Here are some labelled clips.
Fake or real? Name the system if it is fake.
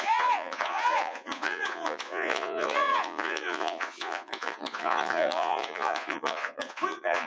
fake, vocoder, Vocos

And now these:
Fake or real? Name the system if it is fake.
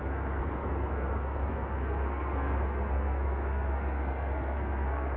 fake, codec, SNAC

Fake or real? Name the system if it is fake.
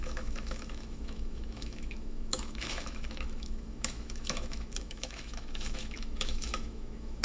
fake, autoencoder, DAC-VAE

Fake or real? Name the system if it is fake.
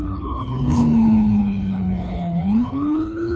fake, codec, HILCodec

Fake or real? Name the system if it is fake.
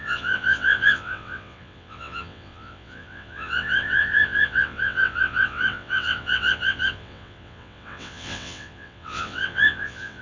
fake, vocoder, WaveNeXt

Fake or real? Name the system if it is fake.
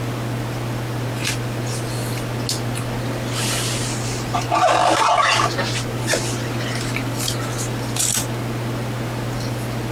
real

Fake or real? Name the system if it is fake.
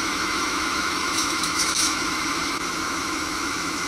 fake, autoencoder, DAC-VAE